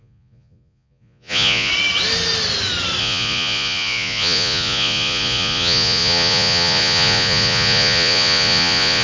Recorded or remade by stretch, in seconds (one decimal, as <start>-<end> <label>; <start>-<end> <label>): 0.0-1.7 remade; 1.7-3.0 recorded; 3.0-9.0 remade